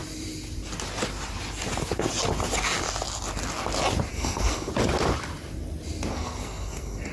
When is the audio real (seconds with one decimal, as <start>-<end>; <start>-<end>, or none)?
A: 0.0-4.1; 4.7-6.1